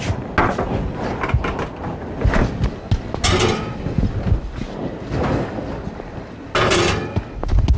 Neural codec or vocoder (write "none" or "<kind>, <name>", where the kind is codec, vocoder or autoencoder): none